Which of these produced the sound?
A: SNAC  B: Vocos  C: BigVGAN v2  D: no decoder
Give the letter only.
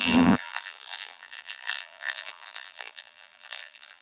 C